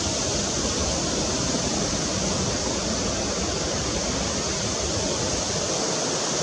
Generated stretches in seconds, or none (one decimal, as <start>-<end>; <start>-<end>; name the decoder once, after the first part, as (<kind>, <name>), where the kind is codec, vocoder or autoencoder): none